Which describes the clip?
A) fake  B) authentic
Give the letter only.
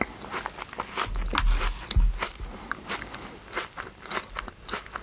B